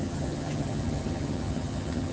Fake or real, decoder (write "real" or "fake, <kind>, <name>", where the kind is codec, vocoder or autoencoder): fake, vocoder, HiFi-GAN